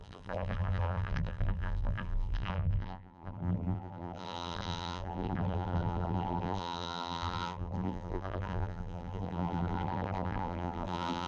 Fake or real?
fake